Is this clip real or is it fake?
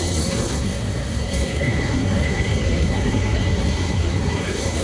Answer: fake